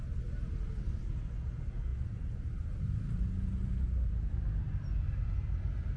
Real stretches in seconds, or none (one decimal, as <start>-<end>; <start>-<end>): 0.0-6.0